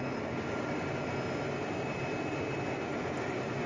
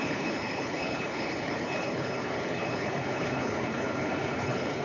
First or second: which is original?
first